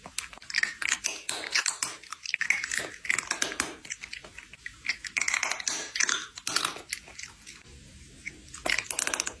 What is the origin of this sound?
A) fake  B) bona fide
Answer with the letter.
B